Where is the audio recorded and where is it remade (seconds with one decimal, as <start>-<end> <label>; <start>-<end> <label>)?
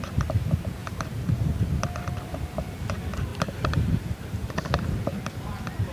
0.0-0.8 recorded; 0.8-1.5 remade; 1.5-3.3 recorded; 3.3-5.0 remade; 5.0-5.9 recorded